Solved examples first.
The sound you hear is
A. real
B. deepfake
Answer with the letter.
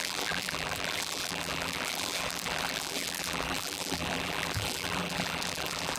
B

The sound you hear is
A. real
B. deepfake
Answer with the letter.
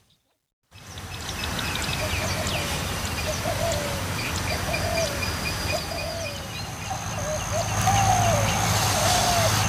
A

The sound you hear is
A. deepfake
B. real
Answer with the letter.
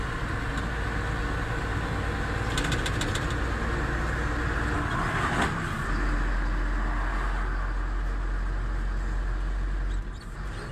B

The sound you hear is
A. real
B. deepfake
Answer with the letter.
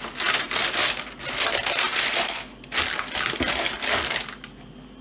A